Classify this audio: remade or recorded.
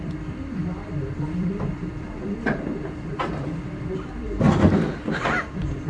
remade